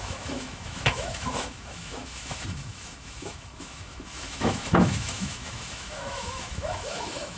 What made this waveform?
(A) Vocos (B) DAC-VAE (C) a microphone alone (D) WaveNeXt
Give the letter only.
B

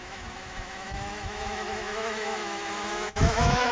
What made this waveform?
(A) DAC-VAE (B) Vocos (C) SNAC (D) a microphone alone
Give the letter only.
A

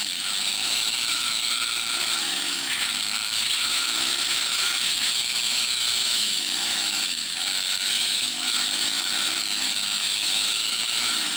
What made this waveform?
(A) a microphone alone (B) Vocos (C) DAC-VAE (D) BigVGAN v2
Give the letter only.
C